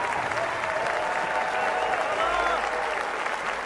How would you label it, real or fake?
real